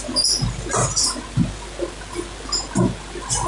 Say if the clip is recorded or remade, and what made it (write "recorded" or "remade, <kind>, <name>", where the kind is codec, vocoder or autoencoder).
recorded